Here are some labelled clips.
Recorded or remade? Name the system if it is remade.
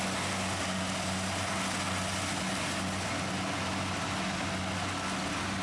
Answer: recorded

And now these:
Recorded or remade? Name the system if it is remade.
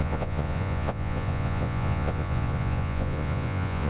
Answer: remade, vocoder, Vocos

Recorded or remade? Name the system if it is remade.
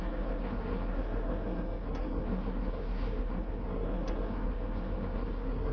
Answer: remade, codec, SNAC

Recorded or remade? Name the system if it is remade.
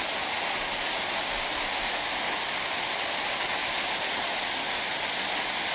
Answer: recorded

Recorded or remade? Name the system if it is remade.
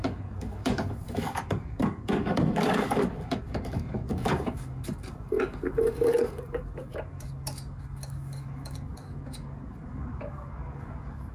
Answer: remade, codec, DAC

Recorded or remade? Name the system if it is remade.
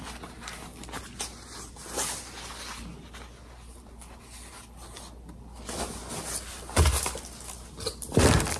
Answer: recorded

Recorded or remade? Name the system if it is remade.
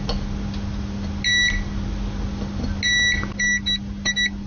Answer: recorded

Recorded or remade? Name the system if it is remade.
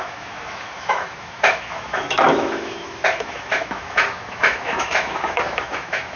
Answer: remade, autoencoder, DAC-VAE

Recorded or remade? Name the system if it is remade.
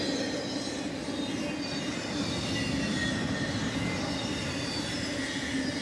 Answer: recorded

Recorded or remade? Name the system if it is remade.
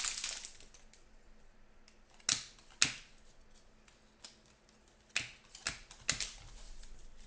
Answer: recorded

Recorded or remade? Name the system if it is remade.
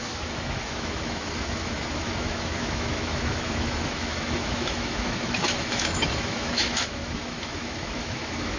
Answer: remade, autoencoder, DAC-VAE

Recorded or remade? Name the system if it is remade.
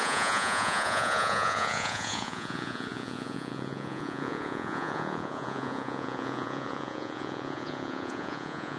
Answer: remade, vocoder, Vocos